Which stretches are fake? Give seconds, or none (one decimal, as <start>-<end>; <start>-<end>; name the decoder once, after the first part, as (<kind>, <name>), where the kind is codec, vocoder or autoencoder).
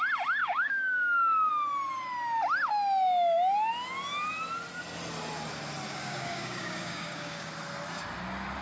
0.4-1.5 (codec, DAC); 5.9-7.5